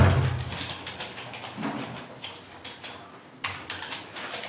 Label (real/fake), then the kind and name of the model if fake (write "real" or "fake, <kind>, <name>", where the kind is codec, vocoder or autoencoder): real